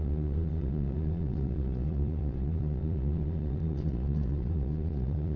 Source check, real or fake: fake